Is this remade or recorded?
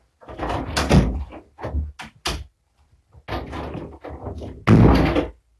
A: recorded